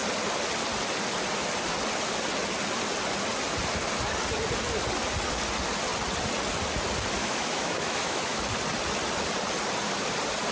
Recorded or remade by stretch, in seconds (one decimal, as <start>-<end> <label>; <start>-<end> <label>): 0.0-7.2 recorded; 7.2-8.4 remade; 8.4-10.5 recorded